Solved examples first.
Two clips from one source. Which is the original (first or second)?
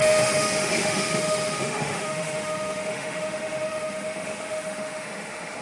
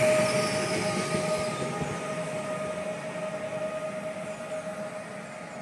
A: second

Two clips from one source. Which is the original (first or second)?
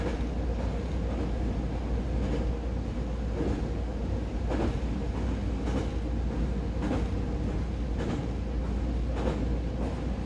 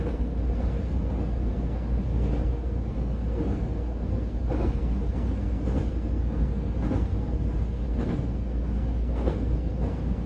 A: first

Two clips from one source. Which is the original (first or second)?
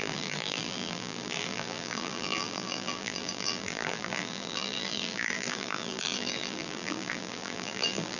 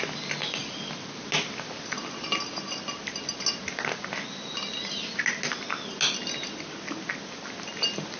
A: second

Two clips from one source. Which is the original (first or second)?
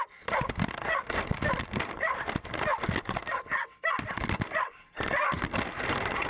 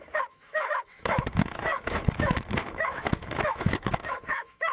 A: first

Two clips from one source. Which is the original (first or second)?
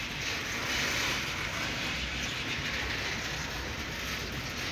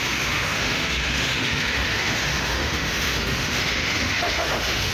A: first